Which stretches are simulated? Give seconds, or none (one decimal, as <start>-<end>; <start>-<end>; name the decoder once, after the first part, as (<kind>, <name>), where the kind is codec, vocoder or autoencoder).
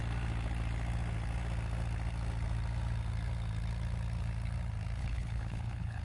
5.0-6.0 (codec, HILCodec)